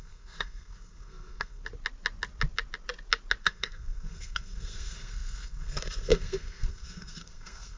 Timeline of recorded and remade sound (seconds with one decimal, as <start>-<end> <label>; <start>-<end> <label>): 0.0-1.6 remade; 1.6-3.4 recorded; 3.4-7.8 remade